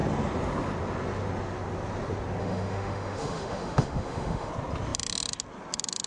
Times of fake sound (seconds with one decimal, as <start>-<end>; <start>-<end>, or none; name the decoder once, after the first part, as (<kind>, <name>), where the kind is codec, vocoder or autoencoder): 2.4-4.5 (autoencoder, DAC-VAE)